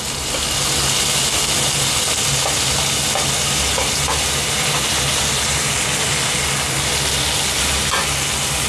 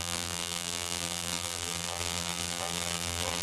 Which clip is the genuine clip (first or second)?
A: first